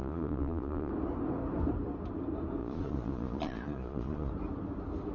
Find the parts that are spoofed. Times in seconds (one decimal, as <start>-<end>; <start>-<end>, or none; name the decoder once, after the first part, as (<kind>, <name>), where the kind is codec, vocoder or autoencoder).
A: 0.0-0.9 (vocoder, Vocos); 2.6-4.3